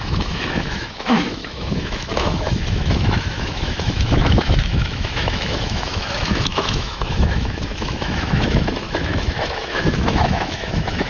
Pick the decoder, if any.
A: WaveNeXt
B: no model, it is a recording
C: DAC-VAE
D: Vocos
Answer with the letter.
C